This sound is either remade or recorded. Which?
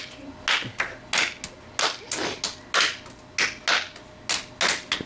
recorded